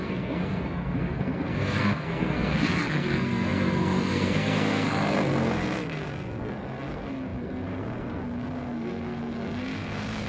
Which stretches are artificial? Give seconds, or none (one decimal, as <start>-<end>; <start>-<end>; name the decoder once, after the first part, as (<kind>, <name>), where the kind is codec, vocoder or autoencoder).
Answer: 0.0-10.3 (codec, SNAC)